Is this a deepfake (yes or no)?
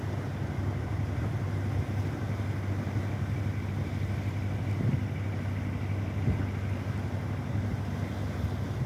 no